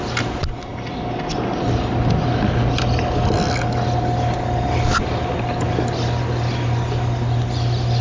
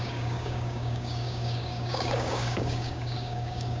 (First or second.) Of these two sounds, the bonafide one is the first